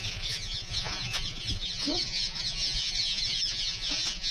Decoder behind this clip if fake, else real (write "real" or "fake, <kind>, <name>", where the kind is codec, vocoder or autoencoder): fake, vocoder, Vocos